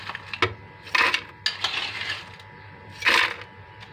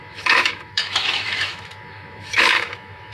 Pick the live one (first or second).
first